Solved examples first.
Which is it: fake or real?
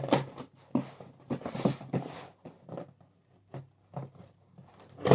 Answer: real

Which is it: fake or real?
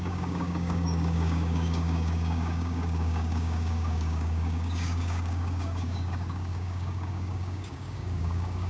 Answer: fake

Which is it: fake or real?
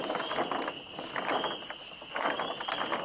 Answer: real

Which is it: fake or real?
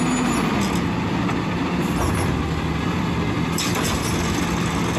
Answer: real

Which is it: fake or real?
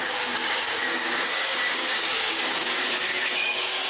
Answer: fake